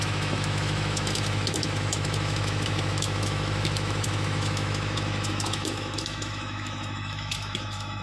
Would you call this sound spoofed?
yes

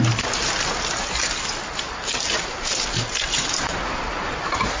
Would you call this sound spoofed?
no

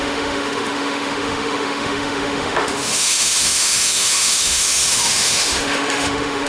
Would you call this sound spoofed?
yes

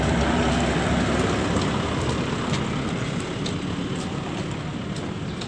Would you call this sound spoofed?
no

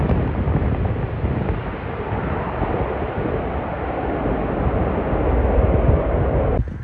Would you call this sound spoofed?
no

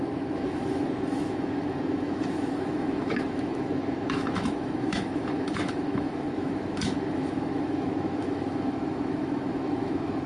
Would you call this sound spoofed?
yes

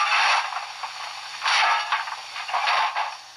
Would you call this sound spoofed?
no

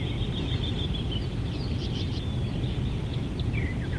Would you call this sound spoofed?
no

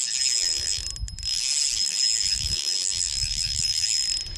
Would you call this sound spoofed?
no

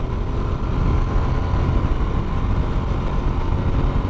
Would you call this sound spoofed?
no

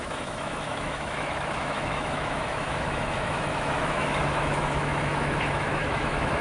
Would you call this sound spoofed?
yes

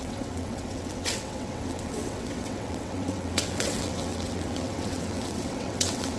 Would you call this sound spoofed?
yes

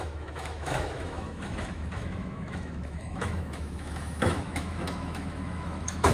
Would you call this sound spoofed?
yes